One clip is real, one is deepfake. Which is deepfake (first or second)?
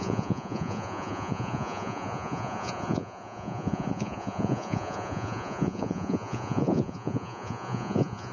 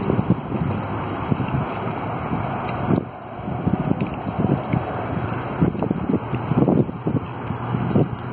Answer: first